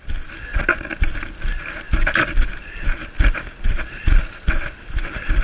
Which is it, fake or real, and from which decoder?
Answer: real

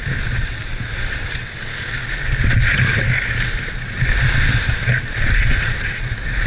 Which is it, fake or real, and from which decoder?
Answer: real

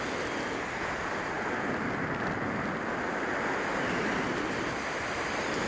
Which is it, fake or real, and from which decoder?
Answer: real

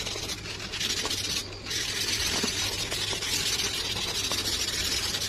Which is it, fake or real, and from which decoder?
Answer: real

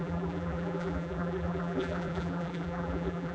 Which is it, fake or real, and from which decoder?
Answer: fake, vocoder, BigVGAN v2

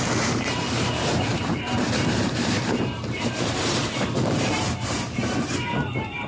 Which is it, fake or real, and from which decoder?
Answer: fake, vocoder, BigVGAN v2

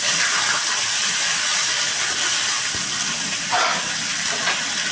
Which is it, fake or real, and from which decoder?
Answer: real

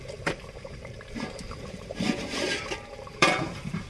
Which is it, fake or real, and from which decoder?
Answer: fake, vocoder, BigVGAN v2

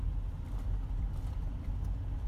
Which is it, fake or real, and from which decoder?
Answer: real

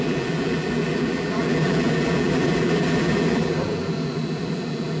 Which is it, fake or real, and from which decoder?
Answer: fake, vocoder, BigVGAN v2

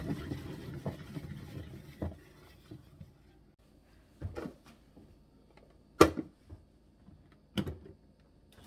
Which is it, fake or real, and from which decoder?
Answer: real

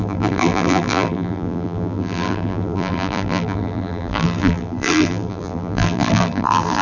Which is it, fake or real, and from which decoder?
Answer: fake, vocoder, BigVGAN v2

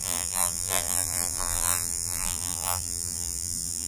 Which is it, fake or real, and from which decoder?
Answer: fake, vocoder, BigVGAN v2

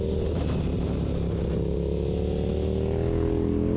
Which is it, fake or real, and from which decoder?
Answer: real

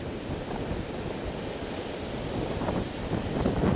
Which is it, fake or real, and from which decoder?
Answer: real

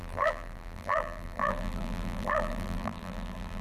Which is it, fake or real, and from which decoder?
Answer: fake, vocoder, BigVGAN v2